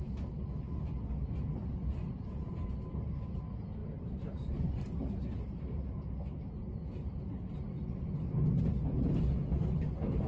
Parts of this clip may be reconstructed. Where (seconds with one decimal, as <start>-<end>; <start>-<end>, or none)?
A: 1.6-3.4; 3.8-4.7